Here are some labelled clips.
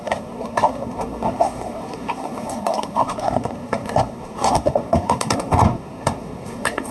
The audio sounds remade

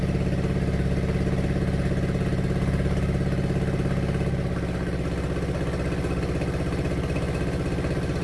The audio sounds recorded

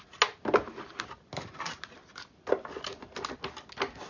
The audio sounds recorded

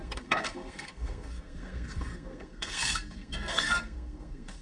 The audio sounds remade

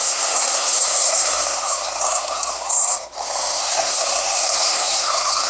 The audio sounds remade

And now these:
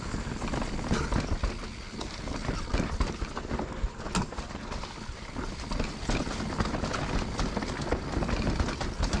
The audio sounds recorded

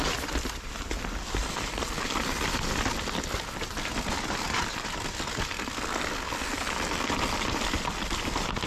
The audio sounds recorded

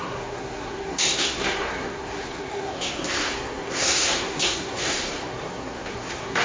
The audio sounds remade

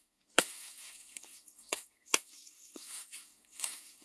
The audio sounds remade